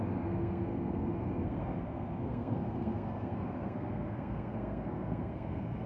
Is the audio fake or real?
fake